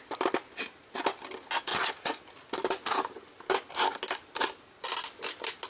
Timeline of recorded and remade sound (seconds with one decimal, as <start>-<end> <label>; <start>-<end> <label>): 0.0-5.7 recorded